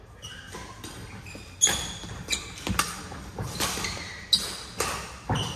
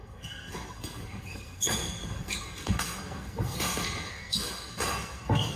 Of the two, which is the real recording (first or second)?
first